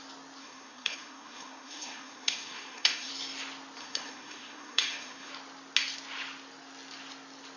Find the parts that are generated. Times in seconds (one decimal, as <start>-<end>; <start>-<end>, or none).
0.4-3.1; 3.8-5.3